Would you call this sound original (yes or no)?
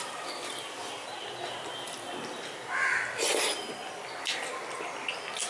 yes